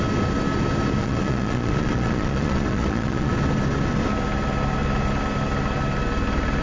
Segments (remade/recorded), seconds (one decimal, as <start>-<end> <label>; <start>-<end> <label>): 0.0-1.0 recorded; 1.0-3.3 remade; 3.3-6.6 recorded